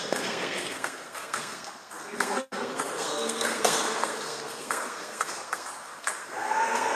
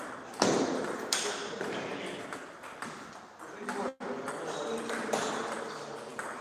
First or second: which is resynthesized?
first